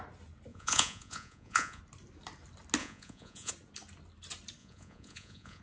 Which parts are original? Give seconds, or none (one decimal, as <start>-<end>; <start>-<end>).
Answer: 0.0-0.5; 1.8-2.8; 3.5-4.6

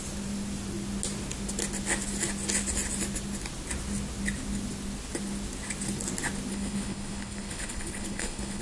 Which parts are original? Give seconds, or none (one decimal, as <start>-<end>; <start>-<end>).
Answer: 0.0-6.5

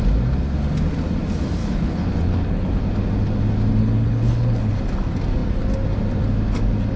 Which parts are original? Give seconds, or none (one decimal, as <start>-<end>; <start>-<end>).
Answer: 0.0-1.6; 2.8-3.8; 4.7-7.0

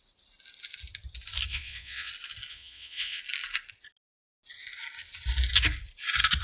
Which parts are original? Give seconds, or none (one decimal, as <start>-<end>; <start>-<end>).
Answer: 0.0-1.5; 2.1-2.5; 3.2-6.4

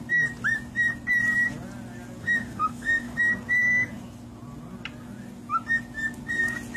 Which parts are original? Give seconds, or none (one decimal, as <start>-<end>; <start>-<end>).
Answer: 0.0-2.2; 3.2-6.8

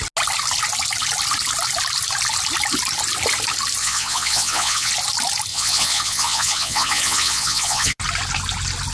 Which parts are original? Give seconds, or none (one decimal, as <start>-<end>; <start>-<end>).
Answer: 0.0-3.8; 4.9-5.5; 8.0-8.9